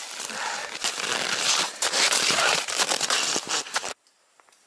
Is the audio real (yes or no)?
no